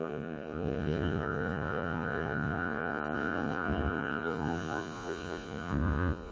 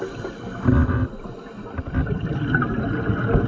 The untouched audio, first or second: second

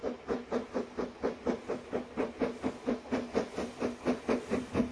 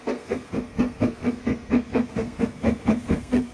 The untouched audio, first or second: first